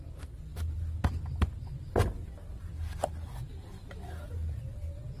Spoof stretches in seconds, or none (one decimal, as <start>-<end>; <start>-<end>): none